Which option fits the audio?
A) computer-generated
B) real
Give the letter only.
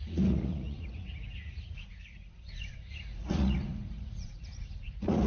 A